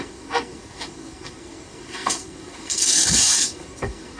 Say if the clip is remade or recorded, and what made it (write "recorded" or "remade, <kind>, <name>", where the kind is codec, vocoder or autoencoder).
remade, codec, SNAC